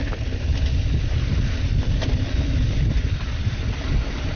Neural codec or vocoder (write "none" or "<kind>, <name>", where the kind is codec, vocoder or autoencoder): none